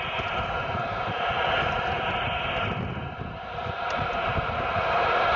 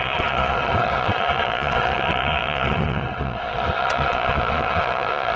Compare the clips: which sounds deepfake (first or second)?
second